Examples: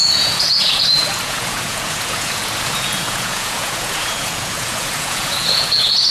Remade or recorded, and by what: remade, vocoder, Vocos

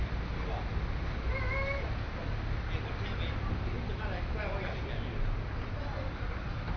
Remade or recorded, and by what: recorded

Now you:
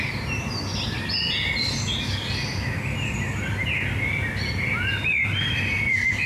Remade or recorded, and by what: recorded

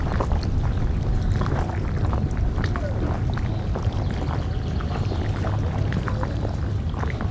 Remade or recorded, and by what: recorded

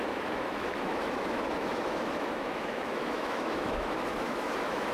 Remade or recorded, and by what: remade, autoencoder, DAC-VAE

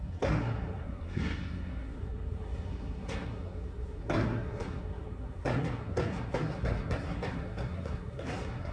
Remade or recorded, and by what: remade, codec, SNAC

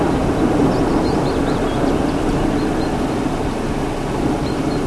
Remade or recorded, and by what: recorded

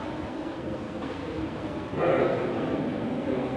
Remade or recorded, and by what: remade, codec, SNAC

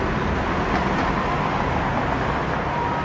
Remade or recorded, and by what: recorded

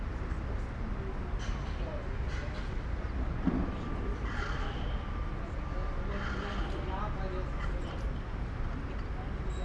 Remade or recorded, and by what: recorded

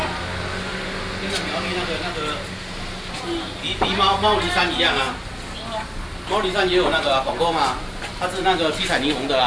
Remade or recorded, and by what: recorded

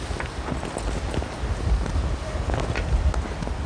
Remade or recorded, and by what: recorded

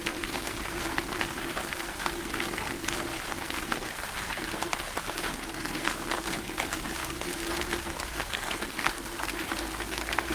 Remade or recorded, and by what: remade, codec, SNAC